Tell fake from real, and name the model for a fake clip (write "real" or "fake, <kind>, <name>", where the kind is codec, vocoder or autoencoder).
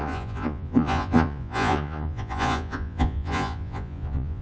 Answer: fake, vocoder, Vocos